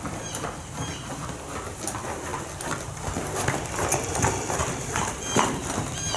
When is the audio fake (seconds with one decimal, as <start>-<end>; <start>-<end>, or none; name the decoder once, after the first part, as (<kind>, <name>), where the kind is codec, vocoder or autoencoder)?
none